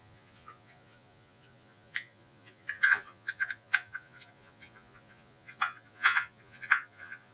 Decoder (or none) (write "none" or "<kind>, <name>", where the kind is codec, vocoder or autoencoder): vocoder, Vocos